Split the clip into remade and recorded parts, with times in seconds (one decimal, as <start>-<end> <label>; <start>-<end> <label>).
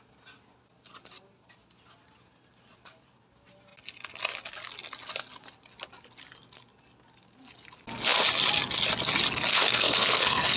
0.0-9.5 recorded; 9.5-10.6 remade